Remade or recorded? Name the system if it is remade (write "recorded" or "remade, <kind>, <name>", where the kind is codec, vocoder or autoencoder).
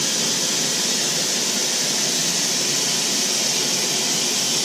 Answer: recorded